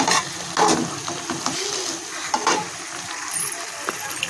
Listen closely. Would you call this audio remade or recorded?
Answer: recorded